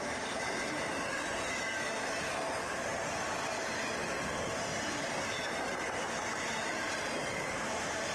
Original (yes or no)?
yes